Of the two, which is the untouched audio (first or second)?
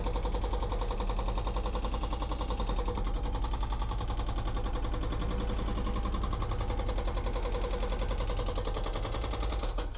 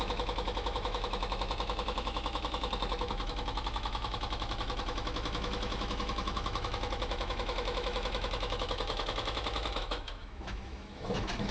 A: first